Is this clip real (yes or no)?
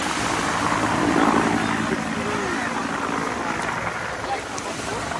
yes